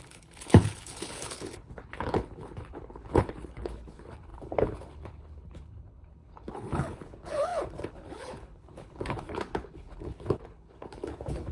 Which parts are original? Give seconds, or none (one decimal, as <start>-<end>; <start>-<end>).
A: none